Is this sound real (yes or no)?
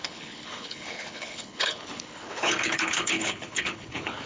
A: no